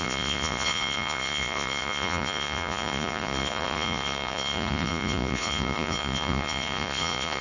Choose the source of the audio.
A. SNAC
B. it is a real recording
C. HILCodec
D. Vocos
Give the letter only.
D